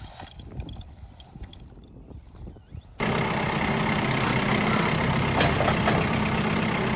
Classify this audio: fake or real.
fake